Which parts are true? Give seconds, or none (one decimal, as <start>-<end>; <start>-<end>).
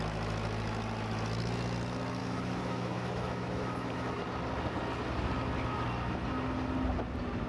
0.0-2.2; 4.2-7.5